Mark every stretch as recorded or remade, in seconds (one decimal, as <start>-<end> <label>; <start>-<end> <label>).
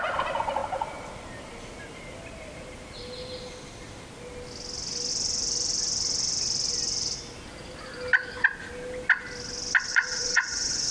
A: 0.0-9.9 recorded; 9.9-10.9 remade